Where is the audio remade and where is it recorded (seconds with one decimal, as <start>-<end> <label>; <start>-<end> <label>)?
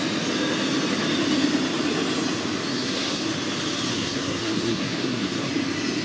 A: 0.0-2.7 recorded; 2.7-3.2 remade; 3.2-3.9 recorded; 3.9-5.5 remade; 5.5-6.0 recorded